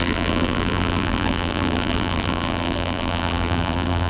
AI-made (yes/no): yes